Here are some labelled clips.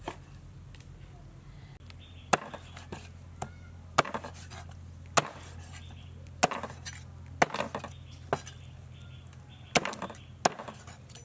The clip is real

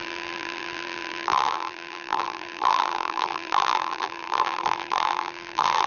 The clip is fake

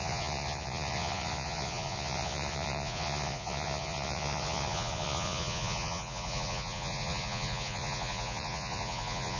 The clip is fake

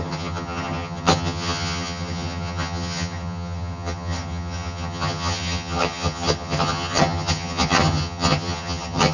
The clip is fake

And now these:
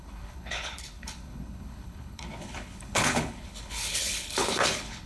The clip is fake